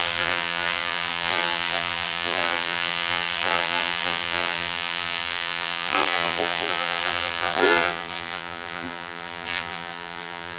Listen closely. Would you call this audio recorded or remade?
remade